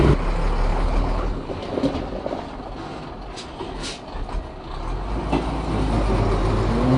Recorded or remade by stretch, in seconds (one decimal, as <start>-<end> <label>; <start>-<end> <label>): 0.0-0.7 recorded; 0.7-1.5 remade; 1.5-7.0 recorded

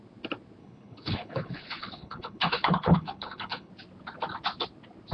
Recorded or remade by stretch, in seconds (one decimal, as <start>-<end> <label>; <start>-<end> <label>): 0.0-0.6 recorded; 0.6-3.7 remade; 3.7-5.1 recorded

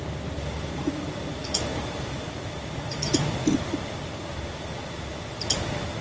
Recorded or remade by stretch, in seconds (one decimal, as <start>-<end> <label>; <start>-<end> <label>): 0.0-6.0 recorded